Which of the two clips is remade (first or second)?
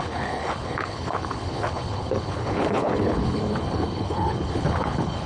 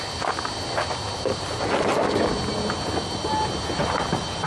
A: first